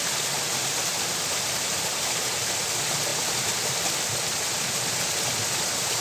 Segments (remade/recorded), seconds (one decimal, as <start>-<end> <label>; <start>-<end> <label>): 0.0-0.8 remade; 0.8-6.0 recorded